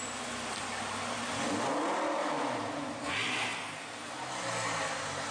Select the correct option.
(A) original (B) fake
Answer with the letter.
A